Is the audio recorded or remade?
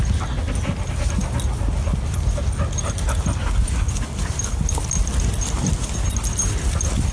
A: recorded